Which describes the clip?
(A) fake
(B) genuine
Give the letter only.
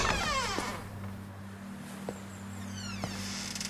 B